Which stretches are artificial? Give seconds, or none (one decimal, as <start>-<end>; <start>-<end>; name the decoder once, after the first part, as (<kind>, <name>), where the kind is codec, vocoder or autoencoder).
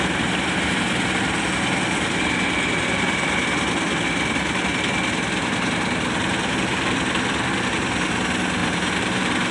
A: 8.6-9.5 (vocoder, BigVGAN v2)